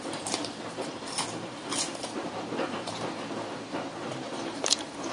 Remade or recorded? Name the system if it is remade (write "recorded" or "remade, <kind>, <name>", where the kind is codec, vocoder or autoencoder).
remade, vocoder, BigVGAN v2